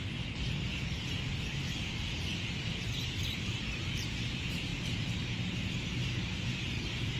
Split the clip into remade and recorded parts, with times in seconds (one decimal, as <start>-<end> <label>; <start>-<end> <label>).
0.0-7.2 remade